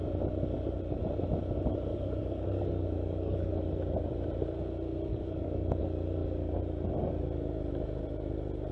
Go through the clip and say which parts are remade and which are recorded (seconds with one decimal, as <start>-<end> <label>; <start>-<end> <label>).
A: 0.0-1.9 recorded; 1.9-3.5 remade; 3.5-5.1 recorded; 5.1-5.8 remade; 5.8-8.7 recorded